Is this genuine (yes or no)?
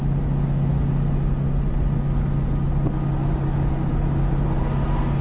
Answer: yes